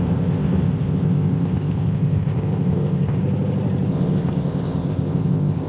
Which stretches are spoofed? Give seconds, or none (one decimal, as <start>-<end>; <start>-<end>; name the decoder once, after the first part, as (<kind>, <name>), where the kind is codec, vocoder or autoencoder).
0.0-3.2 (codec, ZipCodec); 3.9-5.7